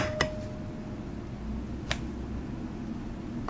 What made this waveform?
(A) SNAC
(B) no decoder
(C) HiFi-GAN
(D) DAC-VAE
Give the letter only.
B